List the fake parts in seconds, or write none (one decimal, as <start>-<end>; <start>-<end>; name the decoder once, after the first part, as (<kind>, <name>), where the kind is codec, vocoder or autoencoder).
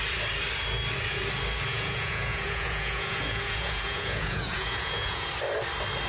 1.7-5.3 (vocoder, Vocos)